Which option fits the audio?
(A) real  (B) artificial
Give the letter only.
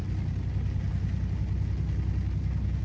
A